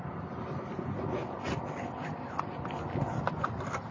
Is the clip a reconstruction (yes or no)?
no